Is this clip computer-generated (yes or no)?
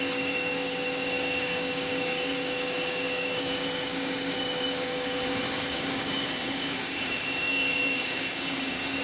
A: yes